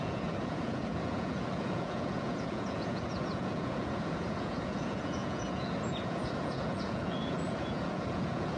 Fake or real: fake